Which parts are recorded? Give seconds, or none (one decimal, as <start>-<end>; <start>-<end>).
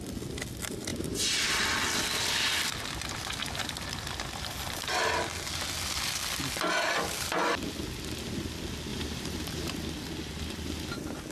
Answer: 0.0-0.9; 1.6-8.9; 9.7-11.3